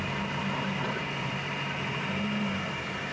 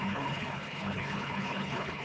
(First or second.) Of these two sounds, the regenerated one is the second